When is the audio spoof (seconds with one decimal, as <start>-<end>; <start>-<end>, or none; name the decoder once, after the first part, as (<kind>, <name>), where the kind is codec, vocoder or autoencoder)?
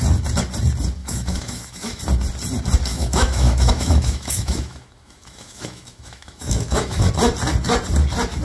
1.0-2.0 (autoencoder, DAC-VAE); 2.9-7.1